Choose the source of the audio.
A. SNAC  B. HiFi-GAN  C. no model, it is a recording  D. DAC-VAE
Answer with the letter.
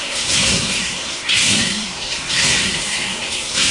A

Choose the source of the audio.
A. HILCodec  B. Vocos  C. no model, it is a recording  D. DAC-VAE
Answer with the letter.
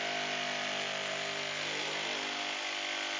C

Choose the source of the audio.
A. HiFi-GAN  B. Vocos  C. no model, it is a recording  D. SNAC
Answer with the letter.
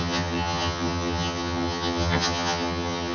A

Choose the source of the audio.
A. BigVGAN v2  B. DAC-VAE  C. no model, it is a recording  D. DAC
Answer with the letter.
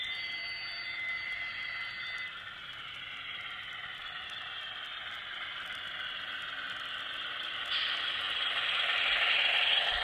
C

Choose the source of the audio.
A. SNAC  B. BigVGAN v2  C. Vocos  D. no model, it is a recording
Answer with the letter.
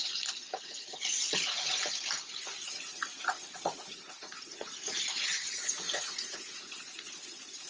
C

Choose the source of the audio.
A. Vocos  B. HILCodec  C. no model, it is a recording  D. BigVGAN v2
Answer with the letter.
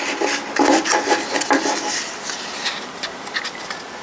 C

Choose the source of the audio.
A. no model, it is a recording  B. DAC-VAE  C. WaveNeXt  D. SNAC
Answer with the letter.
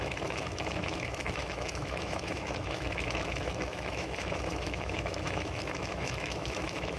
B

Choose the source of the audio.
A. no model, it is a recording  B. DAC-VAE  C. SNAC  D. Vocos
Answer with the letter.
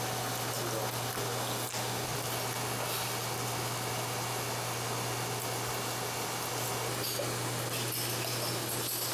A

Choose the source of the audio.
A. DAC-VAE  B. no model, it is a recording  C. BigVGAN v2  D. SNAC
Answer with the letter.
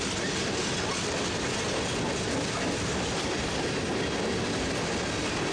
B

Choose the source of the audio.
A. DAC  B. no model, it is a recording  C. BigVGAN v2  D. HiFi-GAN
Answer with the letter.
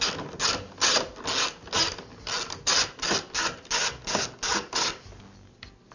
B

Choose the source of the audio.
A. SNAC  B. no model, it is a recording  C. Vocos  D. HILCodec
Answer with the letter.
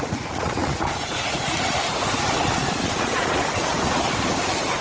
C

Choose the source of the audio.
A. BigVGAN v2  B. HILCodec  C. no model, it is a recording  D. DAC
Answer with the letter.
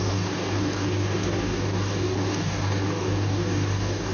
D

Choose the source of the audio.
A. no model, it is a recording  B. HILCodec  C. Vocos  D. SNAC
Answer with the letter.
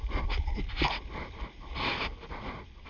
A